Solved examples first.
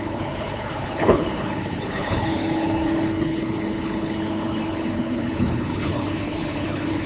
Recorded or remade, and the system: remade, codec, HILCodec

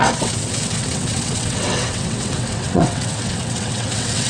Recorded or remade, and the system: remade, vocoder, WaveNeXt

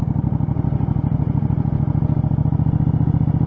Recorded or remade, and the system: recorded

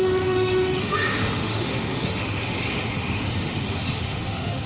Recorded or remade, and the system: remade, autoencoder, DAC-VAE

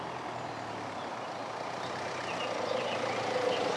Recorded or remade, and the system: recorded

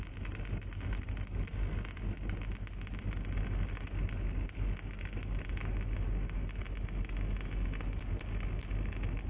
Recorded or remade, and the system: recorded